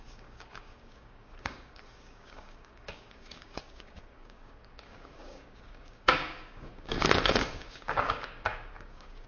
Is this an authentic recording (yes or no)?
no